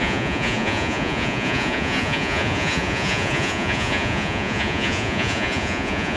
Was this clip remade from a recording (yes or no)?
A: yes